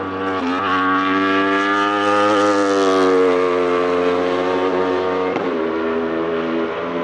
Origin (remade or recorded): remade